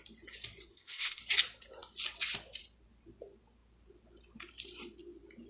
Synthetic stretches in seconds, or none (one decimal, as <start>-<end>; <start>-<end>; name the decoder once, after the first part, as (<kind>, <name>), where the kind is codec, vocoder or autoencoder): 0.7-1.2 (codec, ZipCodec)